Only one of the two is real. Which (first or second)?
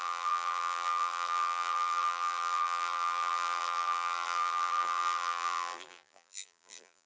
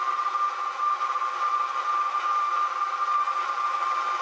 second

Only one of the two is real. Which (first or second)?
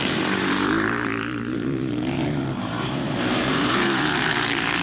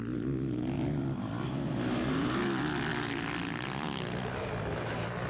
second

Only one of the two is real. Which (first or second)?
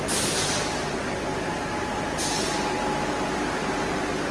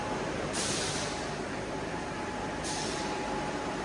first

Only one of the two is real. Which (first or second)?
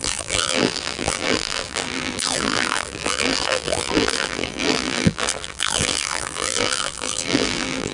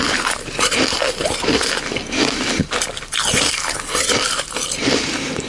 second